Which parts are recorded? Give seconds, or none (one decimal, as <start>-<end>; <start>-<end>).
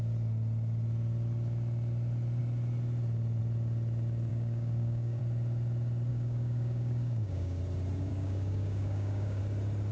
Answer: 0.0-4.3; 5.2-6.1; 7.6-8.1; 9.4-9.9